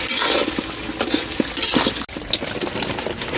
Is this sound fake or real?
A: real